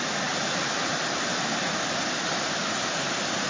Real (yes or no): yes